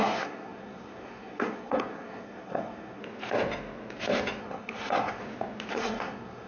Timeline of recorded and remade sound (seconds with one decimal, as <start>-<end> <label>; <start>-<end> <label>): 0.0-3.0 remade; 3.0-4.4 recorded; 4.4-5.2 remade; 5.2-5.7 recorded; 5.7-6.5 remade